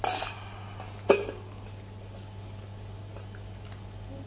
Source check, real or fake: real